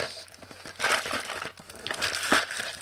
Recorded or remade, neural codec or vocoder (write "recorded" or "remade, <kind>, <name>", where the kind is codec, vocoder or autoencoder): recorded